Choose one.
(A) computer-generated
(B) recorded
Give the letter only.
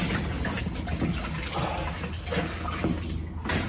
B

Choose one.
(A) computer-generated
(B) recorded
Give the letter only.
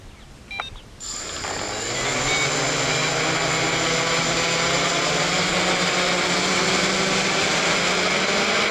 B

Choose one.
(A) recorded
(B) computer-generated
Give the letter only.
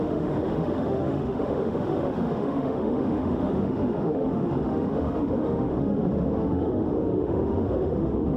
B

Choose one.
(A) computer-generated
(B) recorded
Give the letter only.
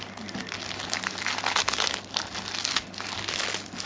B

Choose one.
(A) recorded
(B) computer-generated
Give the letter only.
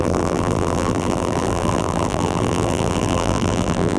B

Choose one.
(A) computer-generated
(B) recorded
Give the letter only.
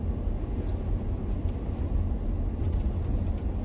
B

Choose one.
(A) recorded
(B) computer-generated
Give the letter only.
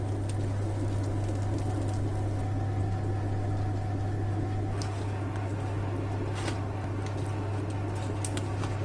A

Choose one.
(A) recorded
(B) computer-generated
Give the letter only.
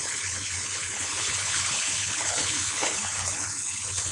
B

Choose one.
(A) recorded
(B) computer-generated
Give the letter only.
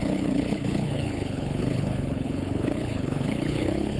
B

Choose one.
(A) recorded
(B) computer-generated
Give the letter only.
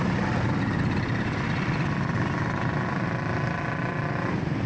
A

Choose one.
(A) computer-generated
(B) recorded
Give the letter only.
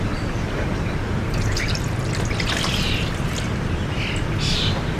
B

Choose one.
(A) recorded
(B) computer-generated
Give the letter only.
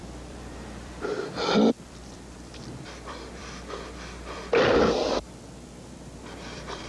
B